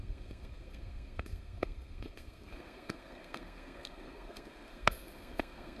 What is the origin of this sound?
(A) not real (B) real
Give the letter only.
A